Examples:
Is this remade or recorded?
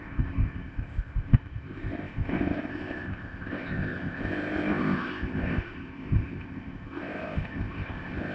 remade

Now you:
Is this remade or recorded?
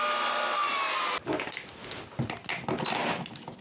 recorded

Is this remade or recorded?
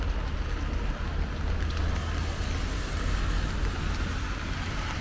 recorded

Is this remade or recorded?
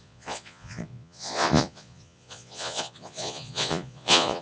remade